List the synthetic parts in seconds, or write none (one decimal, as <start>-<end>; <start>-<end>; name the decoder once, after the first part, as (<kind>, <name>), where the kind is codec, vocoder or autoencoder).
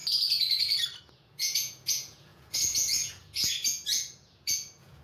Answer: 1.0-5.0 (vocoder, Vocos)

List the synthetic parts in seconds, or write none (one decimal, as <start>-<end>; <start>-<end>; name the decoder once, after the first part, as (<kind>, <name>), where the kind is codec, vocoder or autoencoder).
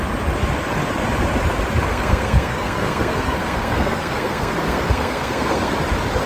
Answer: 1.9-5.7 (codec, SNAC)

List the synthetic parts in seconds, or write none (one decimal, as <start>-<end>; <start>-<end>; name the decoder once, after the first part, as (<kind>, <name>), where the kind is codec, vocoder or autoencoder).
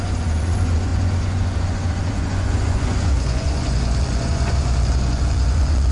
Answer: 0.0-5.9 (vocoder, Vocos)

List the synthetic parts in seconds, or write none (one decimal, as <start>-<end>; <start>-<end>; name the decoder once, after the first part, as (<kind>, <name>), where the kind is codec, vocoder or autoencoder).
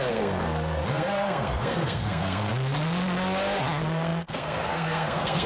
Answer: 0.0-2.5 (codec, SNAC); 3.6-5.5